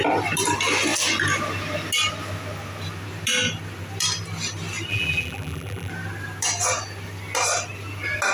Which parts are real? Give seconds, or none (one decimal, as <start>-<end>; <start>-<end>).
0.0-4.9; 5.9-8.3